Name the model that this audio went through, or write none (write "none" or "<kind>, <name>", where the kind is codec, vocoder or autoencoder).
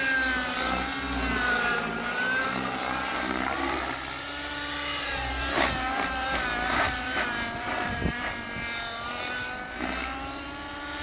none